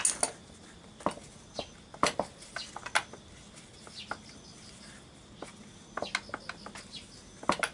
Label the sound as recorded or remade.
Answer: recorded